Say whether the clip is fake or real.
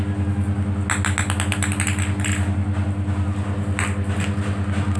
real